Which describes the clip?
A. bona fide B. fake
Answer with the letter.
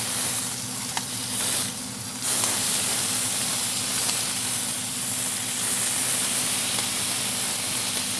A